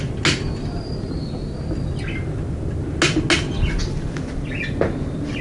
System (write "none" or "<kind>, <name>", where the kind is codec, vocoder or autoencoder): none